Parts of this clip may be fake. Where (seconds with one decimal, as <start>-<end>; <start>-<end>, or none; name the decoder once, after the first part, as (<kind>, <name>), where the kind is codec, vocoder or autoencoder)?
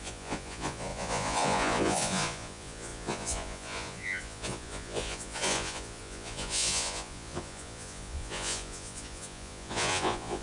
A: 0.0-10.4 (vocoder, Vocos)